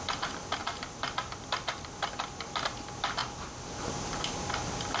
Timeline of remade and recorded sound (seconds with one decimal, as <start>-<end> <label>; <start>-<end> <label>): 0.0-5.0 recorded